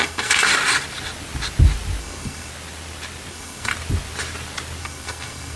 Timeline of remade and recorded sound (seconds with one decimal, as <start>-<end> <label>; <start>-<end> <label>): 0.0-0.5 remade; 0.5-2.0 recorded; 2.0-2.5 remade; 2.5-3.3 recorded; 3.3-3.7 remade; 3.7-4.8 recorded; 4.8-5.6 remade